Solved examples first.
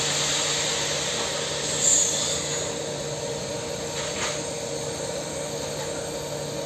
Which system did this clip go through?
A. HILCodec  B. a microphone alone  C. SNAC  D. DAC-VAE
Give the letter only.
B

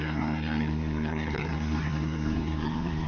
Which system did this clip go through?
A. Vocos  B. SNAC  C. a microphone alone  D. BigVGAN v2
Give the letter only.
B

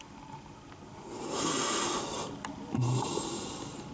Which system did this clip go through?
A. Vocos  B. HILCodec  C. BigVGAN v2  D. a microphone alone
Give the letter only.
D